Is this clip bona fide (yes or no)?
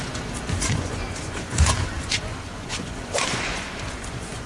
no